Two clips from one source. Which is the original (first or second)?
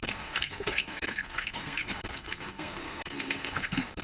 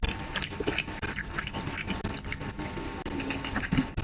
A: second